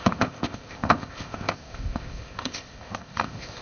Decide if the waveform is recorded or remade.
remade